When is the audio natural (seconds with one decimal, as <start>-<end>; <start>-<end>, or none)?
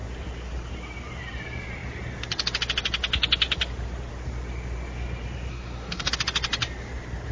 0.0-5.5; 6.1-7.3